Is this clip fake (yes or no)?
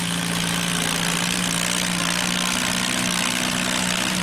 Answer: no